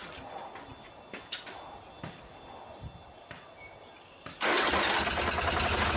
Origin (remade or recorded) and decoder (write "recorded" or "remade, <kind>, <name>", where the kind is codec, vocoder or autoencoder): recorded